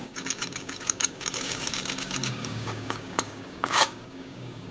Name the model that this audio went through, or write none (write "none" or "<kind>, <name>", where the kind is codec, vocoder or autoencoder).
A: codec, DAC